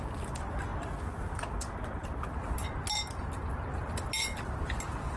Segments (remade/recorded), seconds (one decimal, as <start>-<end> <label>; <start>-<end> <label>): 0.0-5.2 recorded